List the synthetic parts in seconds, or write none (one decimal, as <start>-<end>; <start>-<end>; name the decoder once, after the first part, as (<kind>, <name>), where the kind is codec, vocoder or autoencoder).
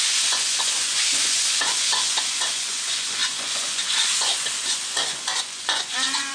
0.0-6.3 (vocoder, Vocos)